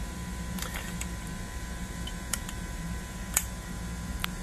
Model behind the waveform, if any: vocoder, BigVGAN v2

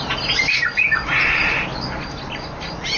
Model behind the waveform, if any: none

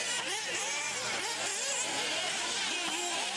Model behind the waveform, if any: none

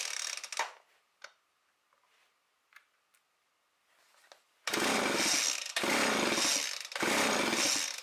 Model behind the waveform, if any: none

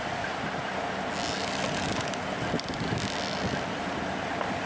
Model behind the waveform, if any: none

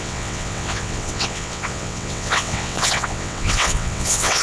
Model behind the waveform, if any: vocoder, WaveNeXt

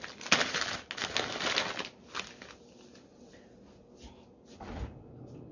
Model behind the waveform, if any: none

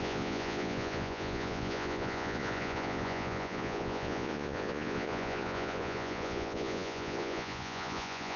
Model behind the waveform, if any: vocoder, Vocos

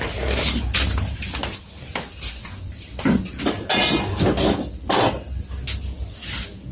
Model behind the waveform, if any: none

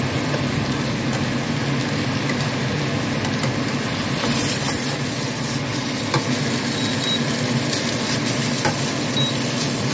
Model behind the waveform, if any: none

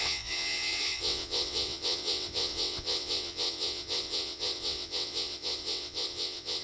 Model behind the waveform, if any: vocoder, WaveNeXt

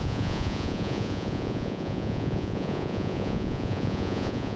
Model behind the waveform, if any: vocoder, Vocos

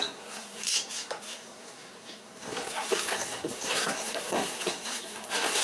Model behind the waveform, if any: codec, SNAC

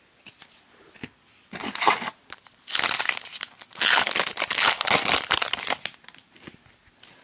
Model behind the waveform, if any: none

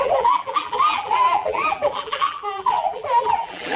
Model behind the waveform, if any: vocoder, BigVGAN v2